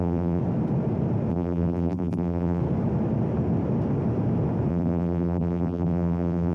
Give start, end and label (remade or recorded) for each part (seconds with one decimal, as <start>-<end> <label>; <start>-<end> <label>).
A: 0.0-0.4 remade; 0.4-1.3 recorded; 1.3-2.6 remade; 2.6-4.7 recorded; 4.7-6.5 remade

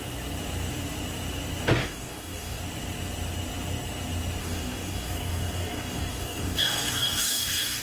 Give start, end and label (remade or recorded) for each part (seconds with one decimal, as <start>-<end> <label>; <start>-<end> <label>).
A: 0.0-1.8 recorded; 1.8-2.6 remade; 2.6-4.4 recorded; 4.4-7.8 remade

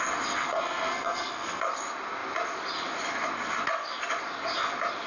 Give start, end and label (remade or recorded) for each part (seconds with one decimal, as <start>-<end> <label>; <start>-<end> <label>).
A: 0.0-0.4 recorded; 0.4-1.6 remade; 1.6-5.1 recorded

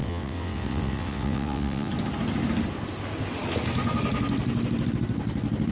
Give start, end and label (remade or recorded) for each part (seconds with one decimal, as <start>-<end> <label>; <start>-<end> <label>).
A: 0.0-1.9 remade; 1.9-5.7 recorded